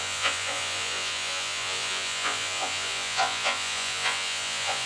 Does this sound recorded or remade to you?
remade